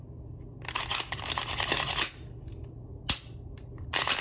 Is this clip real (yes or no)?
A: yes